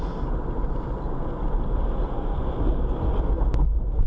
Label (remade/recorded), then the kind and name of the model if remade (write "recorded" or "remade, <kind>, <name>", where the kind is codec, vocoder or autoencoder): recorded